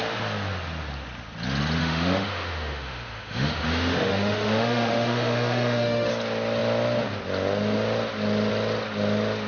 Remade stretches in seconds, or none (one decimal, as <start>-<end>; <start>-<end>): 1.8-6.1